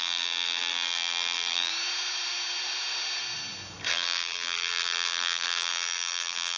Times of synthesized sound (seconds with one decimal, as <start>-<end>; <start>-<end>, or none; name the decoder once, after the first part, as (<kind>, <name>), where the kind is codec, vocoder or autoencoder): 0.0-1.7 (vocoder, BigVGAN v2); 3.9-6.6